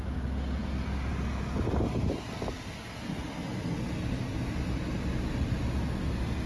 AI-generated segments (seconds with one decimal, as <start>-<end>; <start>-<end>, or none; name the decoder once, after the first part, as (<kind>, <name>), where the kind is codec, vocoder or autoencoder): none